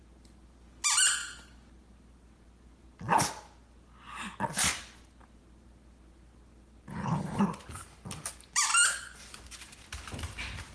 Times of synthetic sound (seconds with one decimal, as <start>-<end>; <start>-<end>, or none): 6.9-7.4